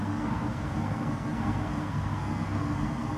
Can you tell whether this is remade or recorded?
remade